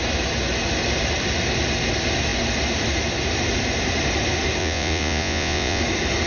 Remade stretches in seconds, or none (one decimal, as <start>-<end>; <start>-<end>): 4.6-5.8